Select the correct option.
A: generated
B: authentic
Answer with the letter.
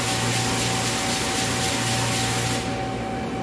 B